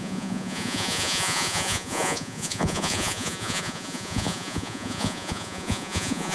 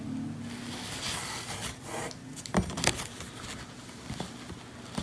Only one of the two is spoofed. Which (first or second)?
first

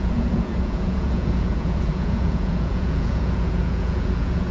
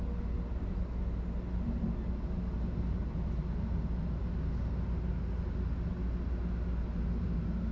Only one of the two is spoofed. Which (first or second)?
first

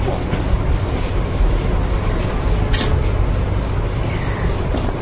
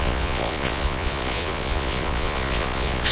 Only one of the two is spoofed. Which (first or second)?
second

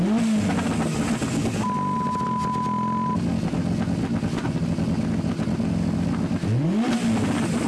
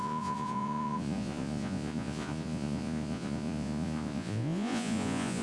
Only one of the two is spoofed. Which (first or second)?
second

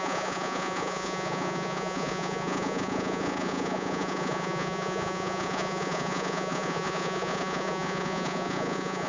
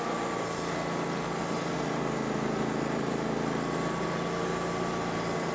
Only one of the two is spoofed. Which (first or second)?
first